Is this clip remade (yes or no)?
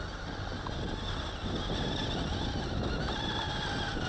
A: no